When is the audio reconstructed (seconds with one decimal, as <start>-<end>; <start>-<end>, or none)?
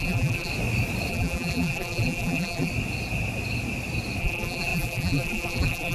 0.0-0.5; 1.1-2.7; 4.2-5.9